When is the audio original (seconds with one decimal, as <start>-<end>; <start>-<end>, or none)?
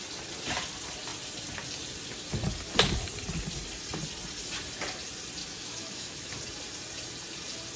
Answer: 0.0-5.4; 6.3-7.8